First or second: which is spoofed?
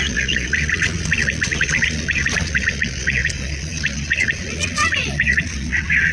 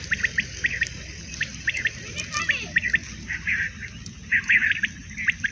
first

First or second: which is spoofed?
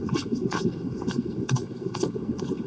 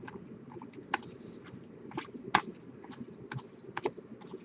first